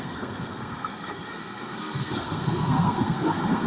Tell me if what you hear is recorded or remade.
remade